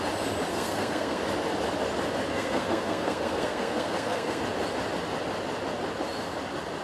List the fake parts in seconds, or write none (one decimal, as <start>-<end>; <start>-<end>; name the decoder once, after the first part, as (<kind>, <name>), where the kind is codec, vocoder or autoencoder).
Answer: 0.5-1.2 (codec, SNAC); 2.3-4.4